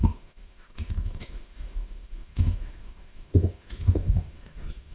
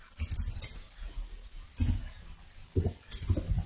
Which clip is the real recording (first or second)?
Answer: second